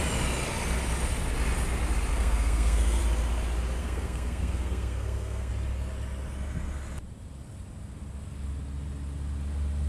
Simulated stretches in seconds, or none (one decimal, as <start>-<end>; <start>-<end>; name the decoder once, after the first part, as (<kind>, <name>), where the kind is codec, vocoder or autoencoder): 2.1-3.0 (codec, SNAC); 3.8-5.5